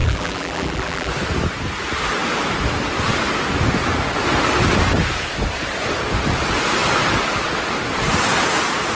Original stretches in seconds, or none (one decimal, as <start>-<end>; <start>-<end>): 1.1-8.9